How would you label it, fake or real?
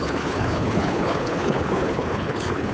fake